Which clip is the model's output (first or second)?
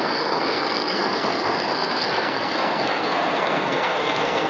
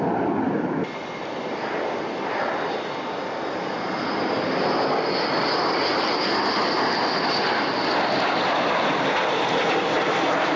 first